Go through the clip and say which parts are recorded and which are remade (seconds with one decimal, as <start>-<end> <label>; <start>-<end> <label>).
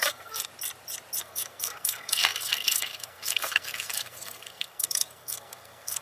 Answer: 0.0-0.5 remade; 0.5-1.2 recorded; 1.2-6.0 remade